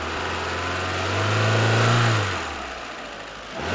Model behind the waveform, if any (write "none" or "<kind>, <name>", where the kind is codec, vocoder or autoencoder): none